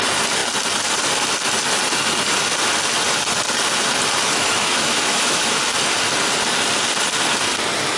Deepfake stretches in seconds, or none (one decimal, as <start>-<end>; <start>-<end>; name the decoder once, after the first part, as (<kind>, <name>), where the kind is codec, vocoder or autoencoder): 4.3-5.6 (autoencoder, DAC-VAE)